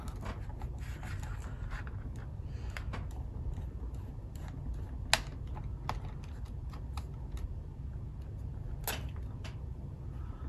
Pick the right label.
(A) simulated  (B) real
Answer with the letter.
B